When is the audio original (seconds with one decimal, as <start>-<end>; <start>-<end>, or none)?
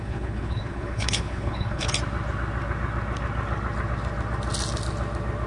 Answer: 1.9-5.5